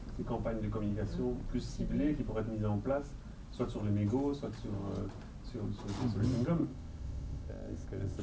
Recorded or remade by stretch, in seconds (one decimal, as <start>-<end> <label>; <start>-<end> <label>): 0.0-6.6 recorded; 6.6-8.2 remade